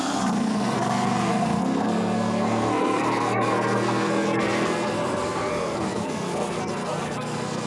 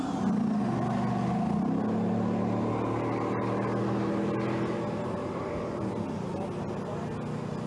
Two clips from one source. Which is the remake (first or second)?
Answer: first